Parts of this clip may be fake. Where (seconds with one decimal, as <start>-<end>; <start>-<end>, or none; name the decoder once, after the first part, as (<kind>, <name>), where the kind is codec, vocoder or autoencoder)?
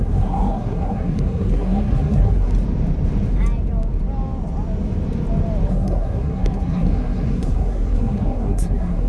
0.0-2.5 (codec, SNAC); 5.7-9.1